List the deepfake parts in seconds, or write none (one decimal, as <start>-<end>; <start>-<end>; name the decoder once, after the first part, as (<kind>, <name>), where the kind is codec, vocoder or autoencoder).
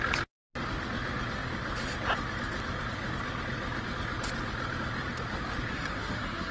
5.7-6.5 (codec, SNAC)